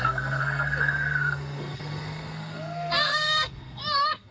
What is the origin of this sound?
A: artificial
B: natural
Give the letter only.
A